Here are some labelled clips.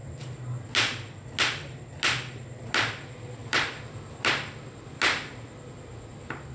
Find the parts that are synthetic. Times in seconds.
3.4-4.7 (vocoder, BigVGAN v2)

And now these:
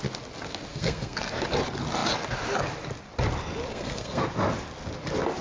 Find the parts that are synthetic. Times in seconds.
0.7-1.3 (codec, SNAC); 3.7-4.3

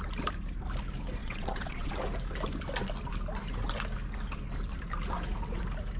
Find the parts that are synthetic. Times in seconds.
1.2-1.9 (vocoder, WaveNeXt)

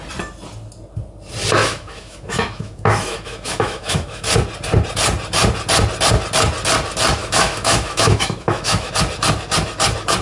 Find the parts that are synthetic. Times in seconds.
1.6-4.3 (autoencoder, DAC-VAE); 7.2-8.9

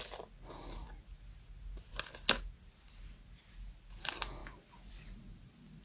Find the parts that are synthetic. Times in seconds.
none